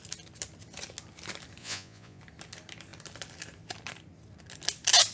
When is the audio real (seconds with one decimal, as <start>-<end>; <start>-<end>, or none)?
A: 0.0-1.6; 2.2-5.1

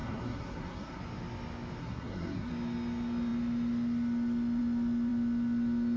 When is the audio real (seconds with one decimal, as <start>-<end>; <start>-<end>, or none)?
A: 1.0-1.8; 2.5-6.0

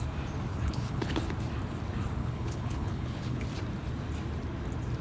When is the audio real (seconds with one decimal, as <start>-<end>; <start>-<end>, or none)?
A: 0.0-0.5; 1.2-2.2; 3.4-5.0

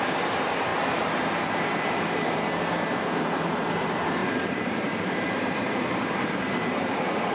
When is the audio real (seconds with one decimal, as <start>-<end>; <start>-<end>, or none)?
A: 0.7-1.6

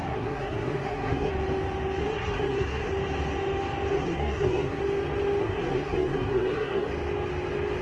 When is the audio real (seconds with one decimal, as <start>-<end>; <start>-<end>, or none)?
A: 1.3-2.0; 2.9-3.9; 4.8-5.4; 6.9-7.8

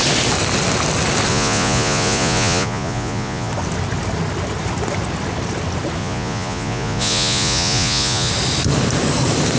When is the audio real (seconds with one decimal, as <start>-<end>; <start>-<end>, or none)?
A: 0.0-1.3; 3.5-6.0; 8.3-9.6

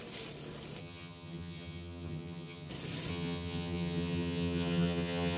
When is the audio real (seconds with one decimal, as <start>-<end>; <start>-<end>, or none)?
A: 0.0-0.8; 2.7-3.1